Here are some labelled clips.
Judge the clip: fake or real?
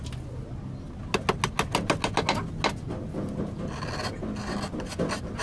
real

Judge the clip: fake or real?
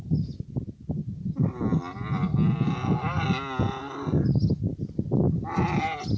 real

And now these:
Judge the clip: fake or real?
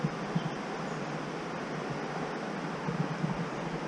real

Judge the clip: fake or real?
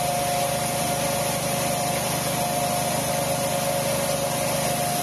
real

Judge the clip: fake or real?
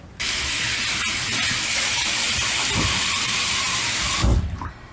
real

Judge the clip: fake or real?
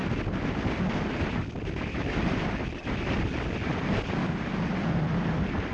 real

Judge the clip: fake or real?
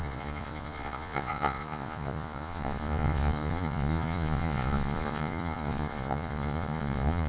fake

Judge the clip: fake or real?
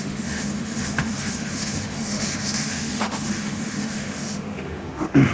fake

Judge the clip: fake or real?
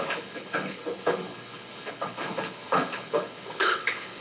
fake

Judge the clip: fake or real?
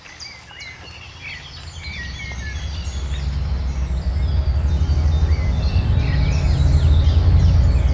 real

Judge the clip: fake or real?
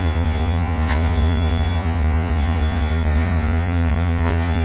fake